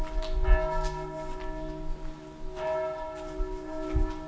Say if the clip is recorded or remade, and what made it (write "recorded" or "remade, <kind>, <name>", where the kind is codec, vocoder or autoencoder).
recorded